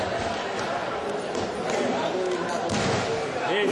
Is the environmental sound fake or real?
real